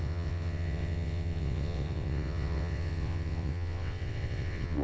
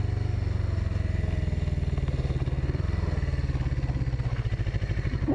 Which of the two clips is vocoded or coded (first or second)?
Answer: first